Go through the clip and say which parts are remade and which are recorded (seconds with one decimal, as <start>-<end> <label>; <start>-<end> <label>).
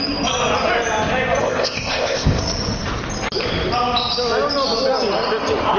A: 0.0-1.4 recorded; 1.4-2.4 remade; 2.4-5.8 recorded